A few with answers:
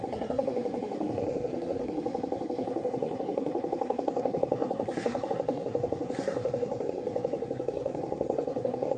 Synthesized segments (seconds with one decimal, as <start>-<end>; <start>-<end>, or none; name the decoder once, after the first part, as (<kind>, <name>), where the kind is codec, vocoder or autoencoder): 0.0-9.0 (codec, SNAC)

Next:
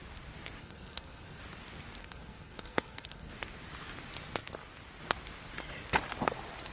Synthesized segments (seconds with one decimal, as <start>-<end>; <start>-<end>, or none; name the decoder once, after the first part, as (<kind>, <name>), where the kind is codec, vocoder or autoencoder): 0.6-1.4 (codec, SNAC); 2.0-3.3

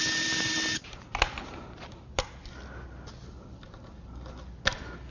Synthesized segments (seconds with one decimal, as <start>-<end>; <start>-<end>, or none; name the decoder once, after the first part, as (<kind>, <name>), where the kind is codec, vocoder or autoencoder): none

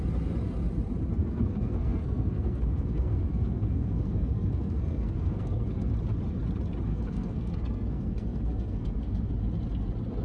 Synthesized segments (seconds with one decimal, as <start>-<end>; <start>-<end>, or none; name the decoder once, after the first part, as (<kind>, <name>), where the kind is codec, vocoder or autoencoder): 1.2-5.9 (codec, SNAC); 6.9-9.3